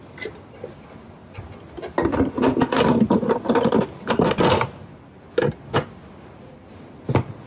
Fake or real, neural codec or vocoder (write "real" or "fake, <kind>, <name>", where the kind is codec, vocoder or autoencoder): real